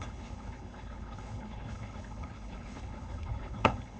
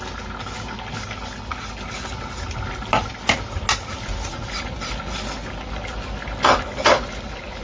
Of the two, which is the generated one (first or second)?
first